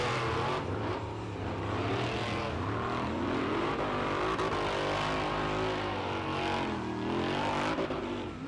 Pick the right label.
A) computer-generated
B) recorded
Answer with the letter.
B